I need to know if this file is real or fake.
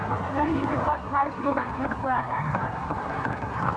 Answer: fake